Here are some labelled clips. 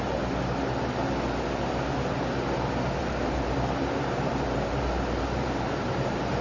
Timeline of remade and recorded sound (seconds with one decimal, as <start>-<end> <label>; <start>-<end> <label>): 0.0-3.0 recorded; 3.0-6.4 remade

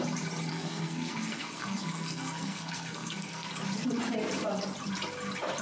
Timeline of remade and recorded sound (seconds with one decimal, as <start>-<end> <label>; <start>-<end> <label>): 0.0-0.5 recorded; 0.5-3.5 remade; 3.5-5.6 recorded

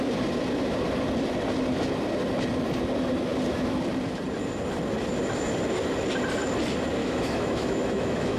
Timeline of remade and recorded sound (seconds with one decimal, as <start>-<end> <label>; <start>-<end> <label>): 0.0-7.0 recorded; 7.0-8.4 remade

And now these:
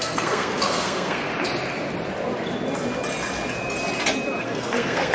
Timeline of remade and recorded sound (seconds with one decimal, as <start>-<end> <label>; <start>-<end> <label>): 0.0-1.3 remade; 1.3-4.4 recorded; 4.4-5.1 remade

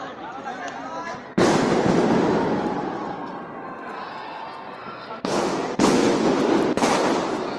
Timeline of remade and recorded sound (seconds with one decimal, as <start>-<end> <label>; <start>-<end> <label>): 0.0-4.2 recorded; 4.2-5.1 remade; 5.1-5.6 recorded; 5.6-6.3 remade; 6.3-7.6 recorded

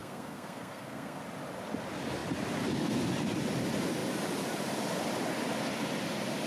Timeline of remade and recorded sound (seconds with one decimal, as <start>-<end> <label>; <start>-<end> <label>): 0.0-1.2 remade; 1.2-6.5 recorded

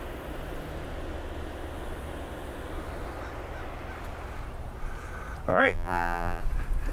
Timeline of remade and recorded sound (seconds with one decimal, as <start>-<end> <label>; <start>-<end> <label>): 0.0-5.5 recorded; 5.5-6.4 remade; 6.4-6.9 recorded